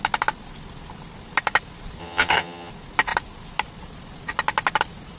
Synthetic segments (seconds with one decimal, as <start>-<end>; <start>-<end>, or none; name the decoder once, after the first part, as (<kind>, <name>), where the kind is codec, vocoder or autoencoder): 2.0-2.7 (vocoder, HiFi-GAN)

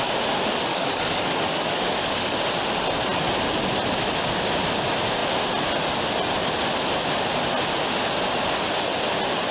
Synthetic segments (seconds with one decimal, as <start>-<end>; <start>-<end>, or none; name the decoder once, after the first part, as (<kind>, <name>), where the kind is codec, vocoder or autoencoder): 0.7-2.4 (codec, DAC)